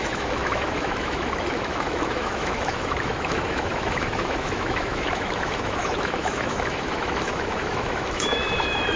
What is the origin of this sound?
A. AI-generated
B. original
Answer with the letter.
A